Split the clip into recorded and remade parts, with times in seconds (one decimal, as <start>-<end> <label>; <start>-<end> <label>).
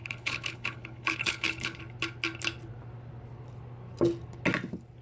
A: 0.0-1.8 remade; 1.8-5.0 recorded